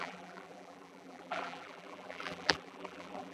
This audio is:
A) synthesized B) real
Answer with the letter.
A